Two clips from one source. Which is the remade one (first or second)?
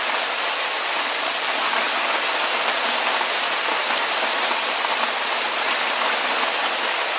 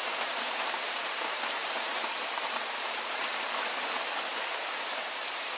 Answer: second